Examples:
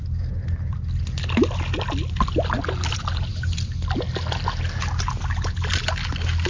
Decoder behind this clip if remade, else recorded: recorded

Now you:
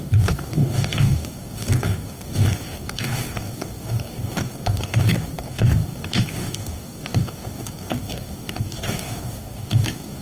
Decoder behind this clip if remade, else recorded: remade, codec, DAC